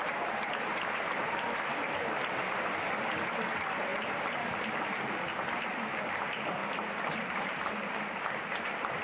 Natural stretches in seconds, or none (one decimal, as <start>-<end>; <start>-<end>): 0.0-9.0